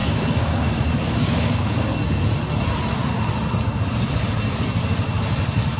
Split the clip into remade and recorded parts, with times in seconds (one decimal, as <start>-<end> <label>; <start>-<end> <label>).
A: 0.0-1.8 remade; 1.8-5.8 recorded